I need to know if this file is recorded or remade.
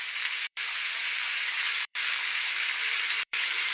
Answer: remade